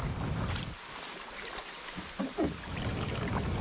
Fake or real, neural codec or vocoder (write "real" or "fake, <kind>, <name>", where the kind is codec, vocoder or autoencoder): real